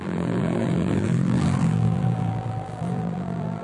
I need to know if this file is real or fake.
fake